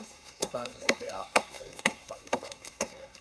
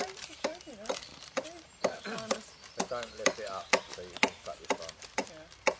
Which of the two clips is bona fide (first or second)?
second